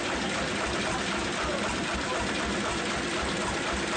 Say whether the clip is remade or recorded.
recorded